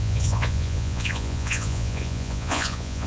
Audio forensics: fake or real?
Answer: fake